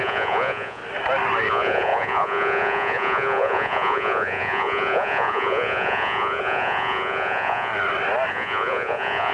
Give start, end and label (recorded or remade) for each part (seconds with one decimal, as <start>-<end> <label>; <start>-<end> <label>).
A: 0.0-0.8 remade; 0.8-1.5 recorded; 1.5-7.7 remade; 7.7-8.3 recorded; 8.3-9.3 remade